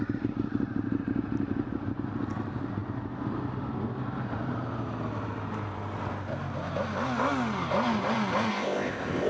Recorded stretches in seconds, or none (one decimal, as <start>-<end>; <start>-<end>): 0.0-8.5